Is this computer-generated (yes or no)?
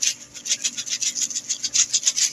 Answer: no